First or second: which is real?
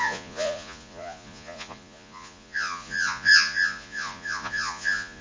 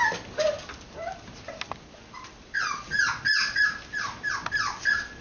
second